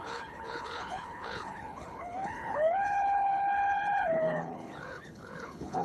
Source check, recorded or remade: remade